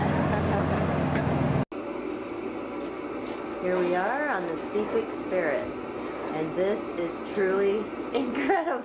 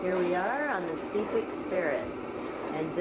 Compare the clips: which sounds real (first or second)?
first